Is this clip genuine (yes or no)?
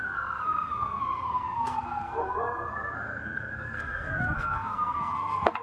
no